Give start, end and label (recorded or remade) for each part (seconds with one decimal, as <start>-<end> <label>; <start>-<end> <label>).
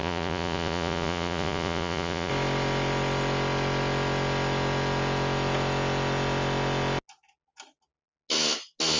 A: 0.0-2.3 remade; 2.3-9.0 recorded